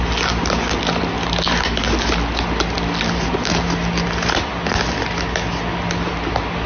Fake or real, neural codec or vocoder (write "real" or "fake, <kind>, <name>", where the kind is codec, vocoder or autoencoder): real